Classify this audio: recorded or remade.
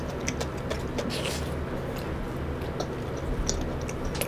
recorded